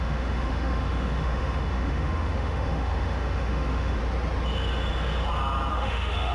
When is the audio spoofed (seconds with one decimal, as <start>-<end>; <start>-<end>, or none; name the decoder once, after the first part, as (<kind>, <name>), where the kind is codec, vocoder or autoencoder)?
0.0-4.0 (autoencoder, DAC-VAE); 5.7-6.3